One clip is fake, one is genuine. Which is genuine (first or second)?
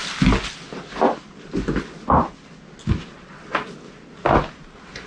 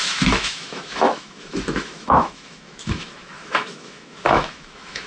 first